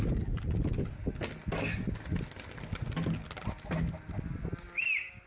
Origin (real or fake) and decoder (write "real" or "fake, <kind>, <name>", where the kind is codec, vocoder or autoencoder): real